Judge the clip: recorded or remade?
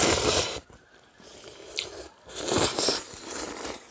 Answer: recorded